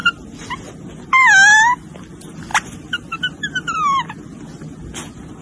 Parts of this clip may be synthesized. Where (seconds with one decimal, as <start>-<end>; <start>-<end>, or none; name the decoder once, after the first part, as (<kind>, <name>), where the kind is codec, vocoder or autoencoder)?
none